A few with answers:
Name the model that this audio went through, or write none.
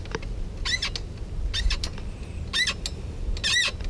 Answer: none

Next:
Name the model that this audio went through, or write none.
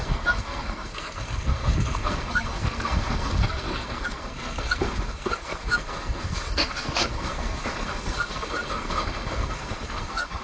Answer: codec, SNAC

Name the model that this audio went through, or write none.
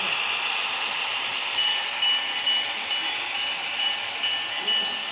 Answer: none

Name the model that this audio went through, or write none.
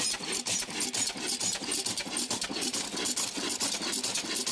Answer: none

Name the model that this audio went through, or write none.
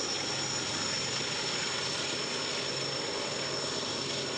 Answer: none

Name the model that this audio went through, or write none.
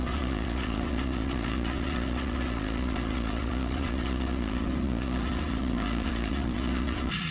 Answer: vocoder, Vocos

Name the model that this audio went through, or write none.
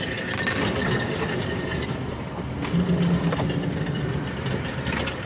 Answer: none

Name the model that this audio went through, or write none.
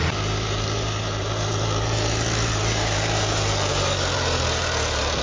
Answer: vocoder, BigVGAN v2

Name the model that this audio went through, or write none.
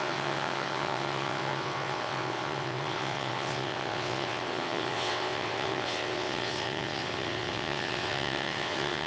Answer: vocoder, WaveNeXt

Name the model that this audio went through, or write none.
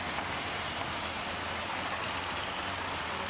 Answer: none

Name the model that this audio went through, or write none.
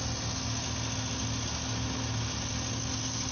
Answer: none